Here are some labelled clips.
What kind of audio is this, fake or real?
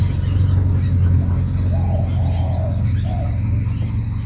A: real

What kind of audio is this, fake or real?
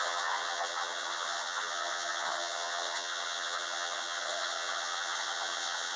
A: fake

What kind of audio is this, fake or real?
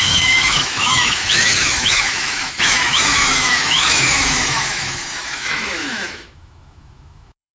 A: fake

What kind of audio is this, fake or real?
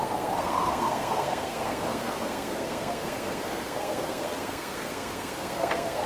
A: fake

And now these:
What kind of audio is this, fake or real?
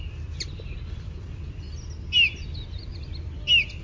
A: real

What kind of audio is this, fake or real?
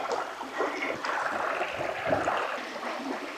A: real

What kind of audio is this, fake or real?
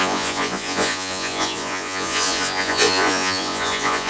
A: fake